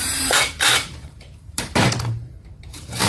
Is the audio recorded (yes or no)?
no